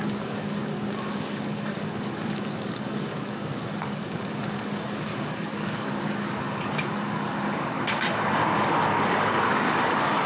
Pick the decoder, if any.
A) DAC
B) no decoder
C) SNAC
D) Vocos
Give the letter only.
A